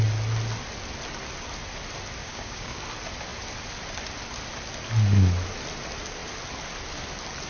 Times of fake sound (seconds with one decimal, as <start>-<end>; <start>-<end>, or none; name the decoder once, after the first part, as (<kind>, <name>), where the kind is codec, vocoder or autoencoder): 2.2-2.8 (codec, DAC)